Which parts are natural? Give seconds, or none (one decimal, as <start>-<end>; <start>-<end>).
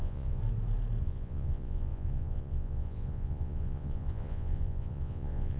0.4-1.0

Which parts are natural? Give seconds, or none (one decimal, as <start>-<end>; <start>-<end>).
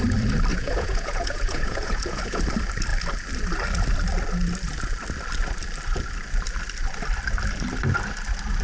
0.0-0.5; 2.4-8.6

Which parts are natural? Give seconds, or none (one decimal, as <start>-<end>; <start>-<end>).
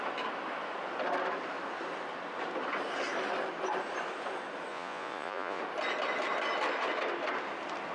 0.0-4.7; 5.6-7.9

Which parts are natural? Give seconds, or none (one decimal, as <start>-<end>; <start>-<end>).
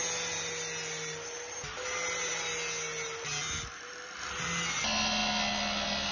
0.0-6.1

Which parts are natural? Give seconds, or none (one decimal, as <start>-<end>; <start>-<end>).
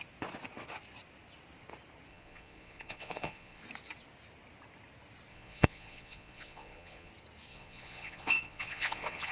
0.0-2.1; 3.6-5.3; 7.1-7.5